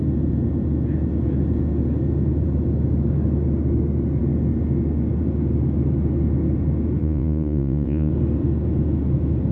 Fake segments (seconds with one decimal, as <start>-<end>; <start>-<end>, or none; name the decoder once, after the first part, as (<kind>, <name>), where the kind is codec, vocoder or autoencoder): 7.0-8.1 (vocoder, Vocos)